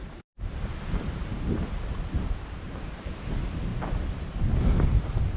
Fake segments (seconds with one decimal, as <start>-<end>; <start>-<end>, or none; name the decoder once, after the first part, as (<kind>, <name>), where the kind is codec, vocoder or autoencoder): 0.0-3.7 (vocoder, BigVGAN v2); 4.9-5.4